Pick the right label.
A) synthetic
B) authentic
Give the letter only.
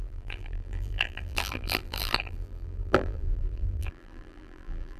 A